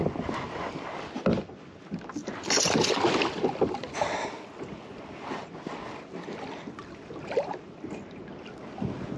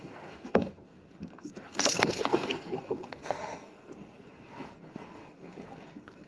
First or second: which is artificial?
second